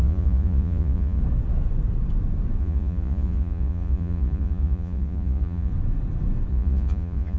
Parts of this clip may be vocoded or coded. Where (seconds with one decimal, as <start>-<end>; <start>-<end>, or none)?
0.0-1.2; 2.6-5.7; 6.5-7.4